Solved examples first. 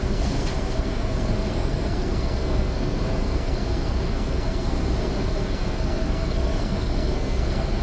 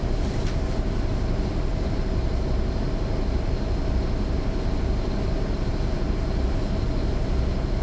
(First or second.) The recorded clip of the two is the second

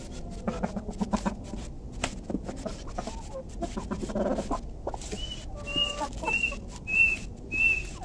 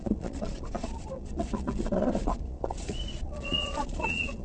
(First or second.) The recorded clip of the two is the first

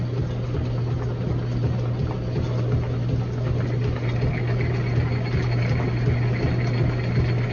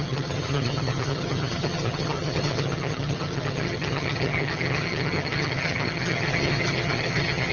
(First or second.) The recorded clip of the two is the first